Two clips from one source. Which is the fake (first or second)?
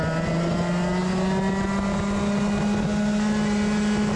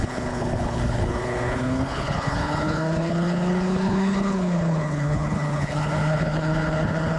second